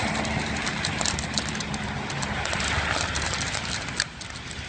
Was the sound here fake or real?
real